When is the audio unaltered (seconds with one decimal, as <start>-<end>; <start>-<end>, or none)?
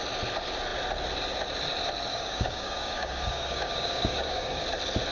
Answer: 0.0-2.1; 4.6-5.1